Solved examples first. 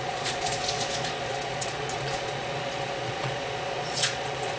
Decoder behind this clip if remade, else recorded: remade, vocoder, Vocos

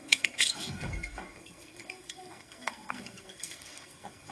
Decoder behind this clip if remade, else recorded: remade, codec, SNAC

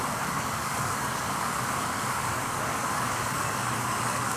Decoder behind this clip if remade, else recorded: remade, codec, DAC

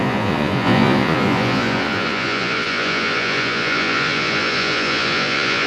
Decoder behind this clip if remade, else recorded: remade, vocoder, Vocos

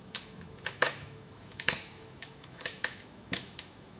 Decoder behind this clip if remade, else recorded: remade, autoencoder, DAC-VAE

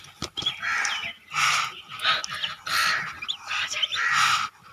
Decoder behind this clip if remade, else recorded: recorded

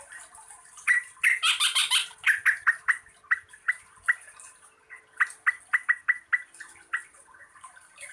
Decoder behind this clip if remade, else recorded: recorded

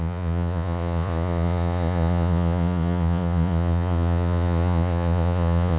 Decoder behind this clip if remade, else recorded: remade, vocoder, Vocos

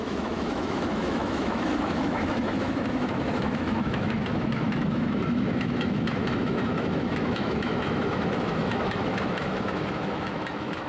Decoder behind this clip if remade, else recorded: remade, autoencoder, DAC-VAE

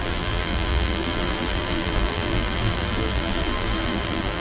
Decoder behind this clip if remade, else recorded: remade, vocoder, BigVGAN v2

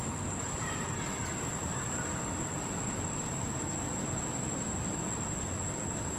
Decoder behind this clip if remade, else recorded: recorded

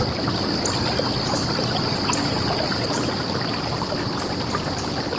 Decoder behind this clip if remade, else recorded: recorded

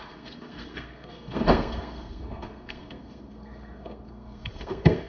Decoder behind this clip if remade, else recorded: remade, codec, SNAC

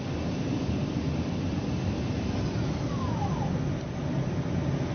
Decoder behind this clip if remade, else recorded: recorded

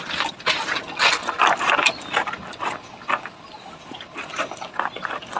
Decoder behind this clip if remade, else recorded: recorded